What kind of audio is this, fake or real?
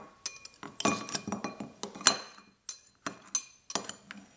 real